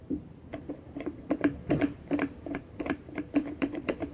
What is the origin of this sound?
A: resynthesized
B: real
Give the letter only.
A